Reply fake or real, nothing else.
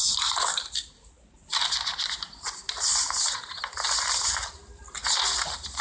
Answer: real